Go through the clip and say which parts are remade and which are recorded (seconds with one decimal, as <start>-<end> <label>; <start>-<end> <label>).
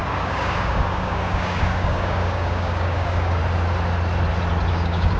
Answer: 0.0-3.4 remade; 3.4-4.7 recorded; 4.7-5.2 remade